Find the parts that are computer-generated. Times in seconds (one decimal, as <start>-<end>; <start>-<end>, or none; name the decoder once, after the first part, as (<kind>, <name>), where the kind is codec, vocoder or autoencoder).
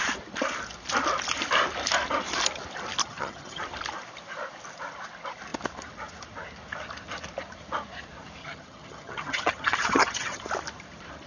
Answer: 3.0-3.6 (vocoder, HiFi-GAN); 8.4-10.4